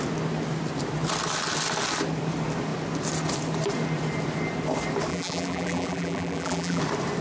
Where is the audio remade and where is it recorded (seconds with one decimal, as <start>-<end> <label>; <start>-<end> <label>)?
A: 0.0-5.1 recorded; 5.1-6.8 remade; 6.8-7.2 recorded